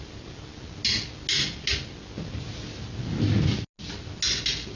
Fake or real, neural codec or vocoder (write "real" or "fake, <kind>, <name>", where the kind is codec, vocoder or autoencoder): real